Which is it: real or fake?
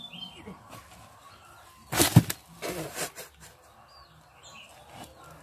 real